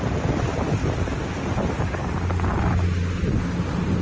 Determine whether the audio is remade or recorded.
recorded